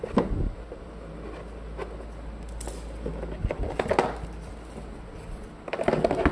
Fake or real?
real